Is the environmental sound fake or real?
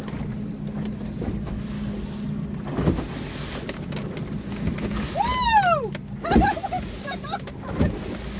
real